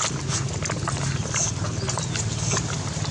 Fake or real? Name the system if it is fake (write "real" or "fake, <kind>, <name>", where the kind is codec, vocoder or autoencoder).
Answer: real